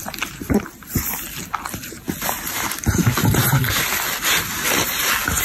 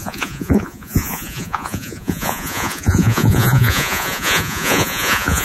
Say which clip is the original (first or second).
first